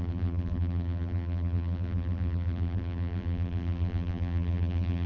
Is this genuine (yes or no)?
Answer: no